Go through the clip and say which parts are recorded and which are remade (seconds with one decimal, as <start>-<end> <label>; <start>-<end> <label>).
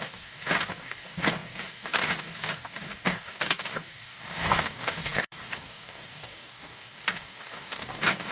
0.0-8.3 remade